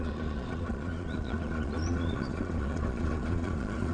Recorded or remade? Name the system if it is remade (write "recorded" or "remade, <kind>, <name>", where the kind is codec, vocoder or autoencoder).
remade, vocoder, Vocos